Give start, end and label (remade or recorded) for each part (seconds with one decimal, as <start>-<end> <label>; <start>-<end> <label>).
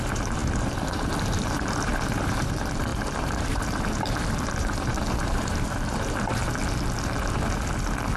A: 0.0-6.4 remade; 6.4-8.2 recorded